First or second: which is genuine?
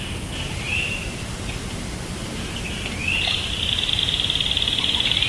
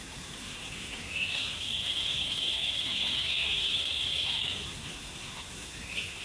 first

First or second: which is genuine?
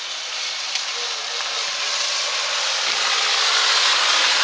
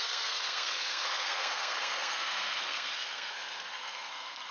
first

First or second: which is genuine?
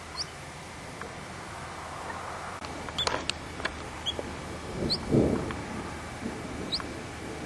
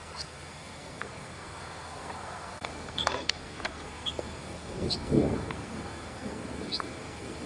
first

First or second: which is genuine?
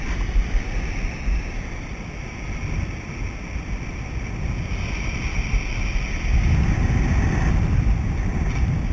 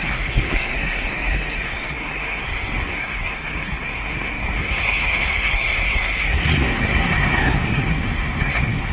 first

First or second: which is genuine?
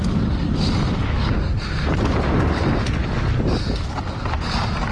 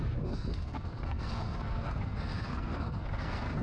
first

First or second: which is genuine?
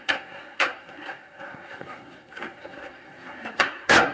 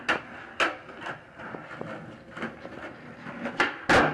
second